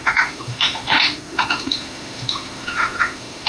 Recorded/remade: remade